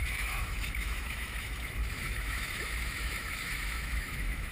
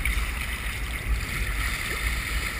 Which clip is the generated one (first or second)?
first